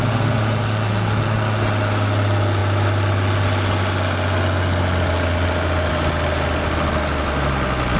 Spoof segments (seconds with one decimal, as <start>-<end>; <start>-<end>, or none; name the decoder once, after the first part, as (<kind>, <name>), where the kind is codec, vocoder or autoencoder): none